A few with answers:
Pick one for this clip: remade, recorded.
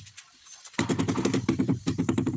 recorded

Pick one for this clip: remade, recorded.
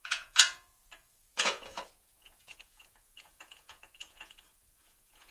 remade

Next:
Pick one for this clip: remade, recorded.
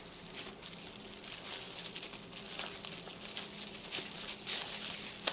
recorded